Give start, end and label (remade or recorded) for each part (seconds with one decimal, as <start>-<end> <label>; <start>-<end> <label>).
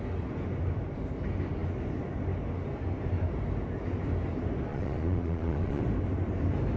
0.0-4.7 recorded; 4.7-5.8 remade; 5.8-6.8 recorded